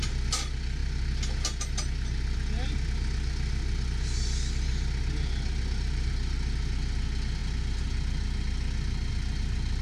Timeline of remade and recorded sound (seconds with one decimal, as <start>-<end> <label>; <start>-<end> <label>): 0.0-9.8 recorded